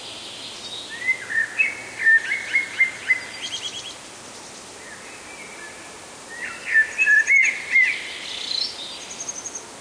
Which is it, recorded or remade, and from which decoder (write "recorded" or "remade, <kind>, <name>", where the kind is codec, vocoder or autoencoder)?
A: recorded